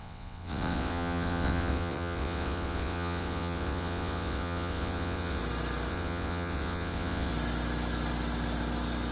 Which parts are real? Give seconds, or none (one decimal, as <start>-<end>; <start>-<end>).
5.4-5.9; 7.3-9.1